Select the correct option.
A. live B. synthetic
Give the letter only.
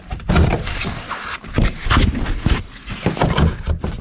A